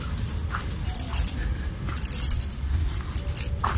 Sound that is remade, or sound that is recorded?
recorded